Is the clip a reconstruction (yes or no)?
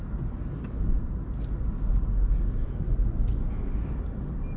no